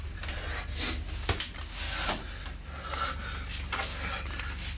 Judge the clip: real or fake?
real